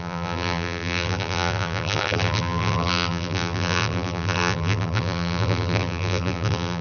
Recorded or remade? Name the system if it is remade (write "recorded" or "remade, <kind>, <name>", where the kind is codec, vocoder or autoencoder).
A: remade, vocoder, BigVGAN v2